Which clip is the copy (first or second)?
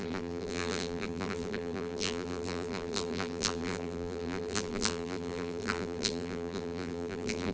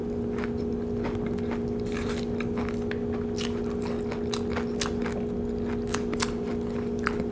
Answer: first